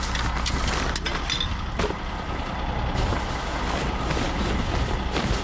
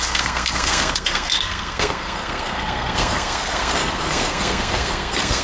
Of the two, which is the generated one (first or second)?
second